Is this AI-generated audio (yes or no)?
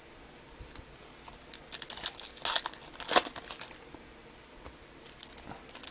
no